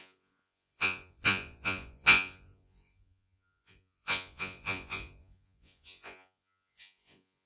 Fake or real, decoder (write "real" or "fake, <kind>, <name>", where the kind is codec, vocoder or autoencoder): fake, vocoder, Vocos